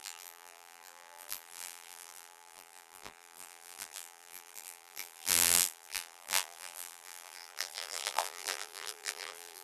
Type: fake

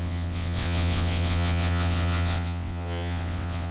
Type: fake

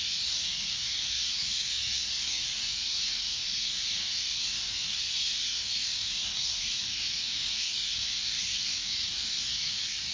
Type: fake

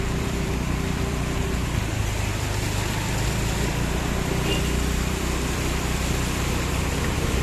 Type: fake